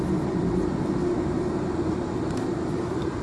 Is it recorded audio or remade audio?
recorded